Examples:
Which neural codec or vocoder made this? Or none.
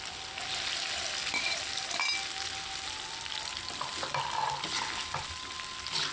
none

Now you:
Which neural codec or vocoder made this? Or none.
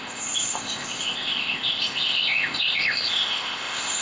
codec, ZipCodec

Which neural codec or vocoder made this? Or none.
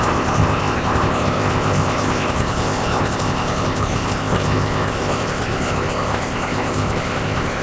codec, ZipCodec